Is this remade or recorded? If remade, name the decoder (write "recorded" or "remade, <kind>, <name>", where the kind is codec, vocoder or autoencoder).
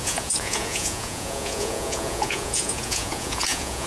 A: remade, vocoder, Vocos